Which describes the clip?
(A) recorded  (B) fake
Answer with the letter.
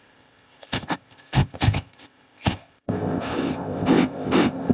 B